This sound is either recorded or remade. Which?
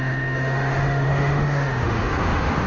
remade